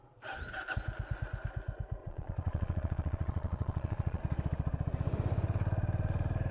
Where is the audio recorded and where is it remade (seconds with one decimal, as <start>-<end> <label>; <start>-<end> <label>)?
0.0-2.0 recorded; 2.0-4.2 remade; 4.2-6.5 recorded